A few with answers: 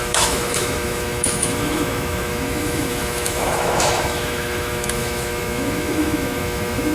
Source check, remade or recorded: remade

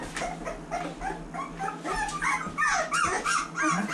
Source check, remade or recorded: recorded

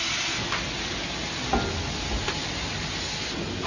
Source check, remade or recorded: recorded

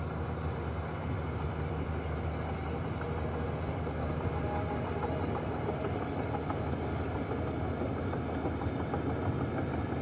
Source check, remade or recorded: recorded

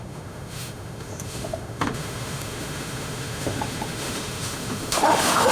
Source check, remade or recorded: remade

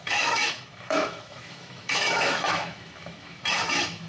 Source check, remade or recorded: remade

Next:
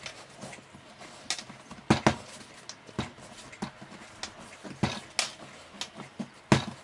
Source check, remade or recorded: recorded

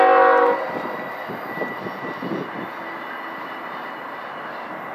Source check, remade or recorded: recorded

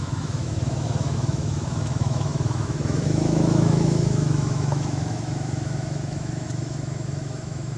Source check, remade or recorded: remade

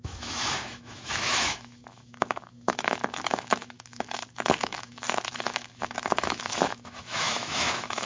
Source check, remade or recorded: remade